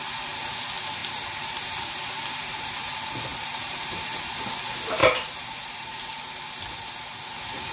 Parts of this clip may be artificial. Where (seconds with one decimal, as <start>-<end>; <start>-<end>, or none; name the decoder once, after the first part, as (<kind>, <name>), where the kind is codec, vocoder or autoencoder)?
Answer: 1.0-2.8 (vocoder, BigVGAN v2); 3.3-4.1; 5.0-6.0